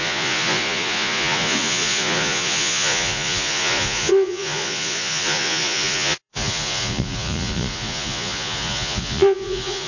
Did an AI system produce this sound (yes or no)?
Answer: yes